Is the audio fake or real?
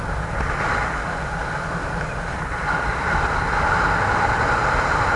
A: real